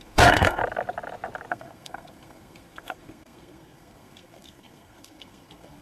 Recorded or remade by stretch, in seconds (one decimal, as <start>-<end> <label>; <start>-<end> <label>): 0.0-0.6 remade; 0.6-1.5 recorded; 1.5-5.8 remade